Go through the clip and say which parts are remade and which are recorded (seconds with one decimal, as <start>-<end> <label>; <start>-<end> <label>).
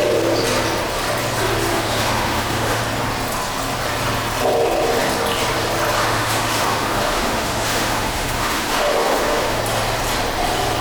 0.0-1.7 recorded; 1.7-2.8 remade; 2.8-6.0 recorded; 6.0-9.6 remade; 9.6-10.8 recorded